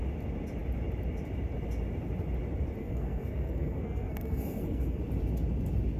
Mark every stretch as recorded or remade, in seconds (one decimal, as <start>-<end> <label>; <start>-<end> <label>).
0.0-2.8 recorded; 2.8-5.0 remade; 5.0-6.0 recorded